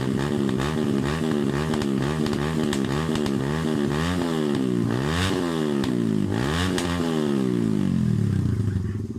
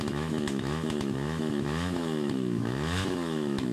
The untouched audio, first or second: first